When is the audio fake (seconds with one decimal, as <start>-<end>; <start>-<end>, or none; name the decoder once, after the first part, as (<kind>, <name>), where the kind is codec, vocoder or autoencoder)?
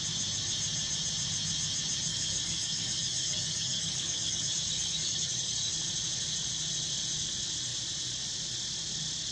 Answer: 2.1-5.8 (codec, DAC)